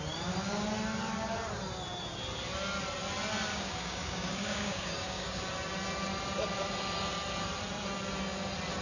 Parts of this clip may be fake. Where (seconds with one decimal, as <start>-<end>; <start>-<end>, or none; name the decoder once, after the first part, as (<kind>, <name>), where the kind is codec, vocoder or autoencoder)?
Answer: 3.5-5.4 (codec, DAC)